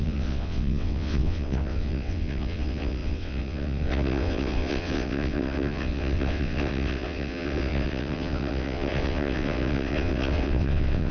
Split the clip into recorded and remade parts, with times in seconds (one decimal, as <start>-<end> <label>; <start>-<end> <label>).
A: 0.0-11.1 remade